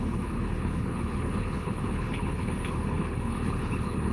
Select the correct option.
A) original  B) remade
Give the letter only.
B